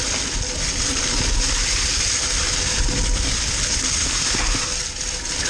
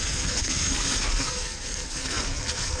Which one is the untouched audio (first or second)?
first